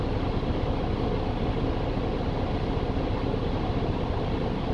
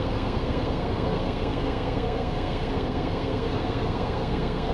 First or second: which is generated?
second